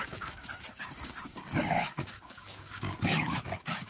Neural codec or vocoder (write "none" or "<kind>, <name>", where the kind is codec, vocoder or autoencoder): codec, DAC